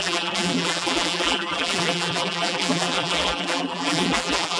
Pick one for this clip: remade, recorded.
remade